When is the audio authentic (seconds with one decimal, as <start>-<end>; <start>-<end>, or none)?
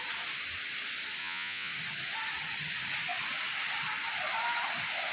0.0-1.2; 1.7-5.1